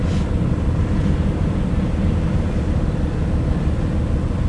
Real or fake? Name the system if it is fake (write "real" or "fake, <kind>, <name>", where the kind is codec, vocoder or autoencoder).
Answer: real